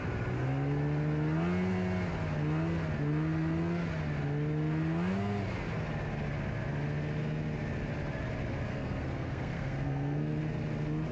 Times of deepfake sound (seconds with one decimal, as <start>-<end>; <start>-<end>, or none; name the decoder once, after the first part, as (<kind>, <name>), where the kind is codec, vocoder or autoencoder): 8.7-10.4 (codec, SNAC)